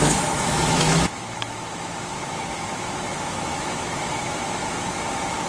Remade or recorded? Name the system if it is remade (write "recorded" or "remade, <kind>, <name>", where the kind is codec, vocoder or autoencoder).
remade, autoencoder, DAC-VAE